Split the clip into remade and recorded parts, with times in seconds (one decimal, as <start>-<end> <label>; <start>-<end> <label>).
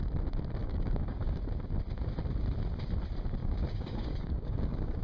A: 0.0-0.6 recorded; 0.6-1.4 remade; 1.4-3.4 recorded; 3.4-5.0 remade